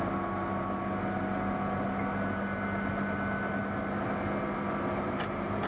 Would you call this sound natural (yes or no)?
yes